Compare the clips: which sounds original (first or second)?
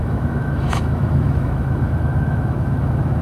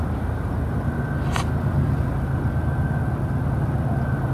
second